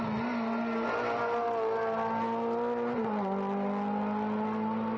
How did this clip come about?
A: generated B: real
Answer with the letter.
B